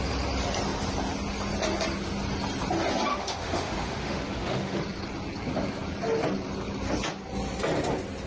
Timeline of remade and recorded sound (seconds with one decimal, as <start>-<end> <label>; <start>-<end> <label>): 0.0-3.1 recorded; 3.1-4.8 remade; 4.8-8.3 recorded